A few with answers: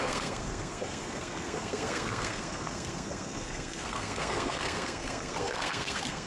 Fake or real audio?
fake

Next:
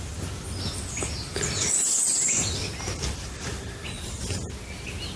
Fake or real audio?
real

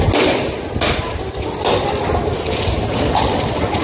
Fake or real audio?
real